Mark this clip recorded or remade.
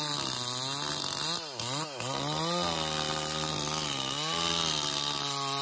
recorded